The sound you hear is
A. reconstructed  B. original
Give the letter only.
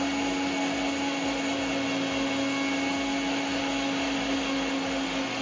B